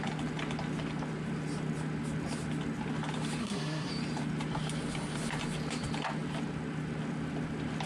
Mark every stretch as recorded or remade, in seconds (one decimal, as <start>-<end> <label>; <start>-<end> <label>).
0.0-3.4 recorded; 3.4-3.9 remade; 3.9-7.9 recorded